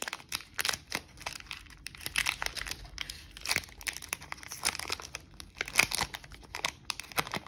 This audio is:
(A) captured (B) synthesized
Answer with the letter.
A